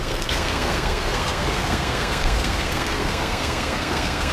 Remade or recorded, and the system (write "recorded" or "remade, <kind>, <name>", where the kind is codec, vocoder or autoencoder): remade, codec, SNAC